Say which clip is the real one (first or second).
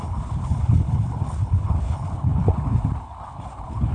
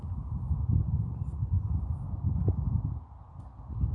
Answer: second